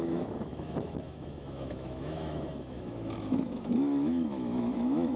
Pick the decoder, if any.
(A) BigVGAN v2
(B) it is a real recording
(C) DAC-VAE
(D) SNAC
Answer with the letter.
C